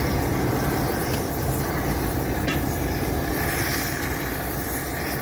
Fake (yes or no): no